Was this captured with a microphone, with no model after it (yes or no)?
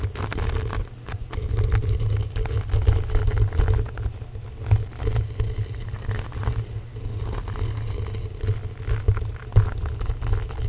yes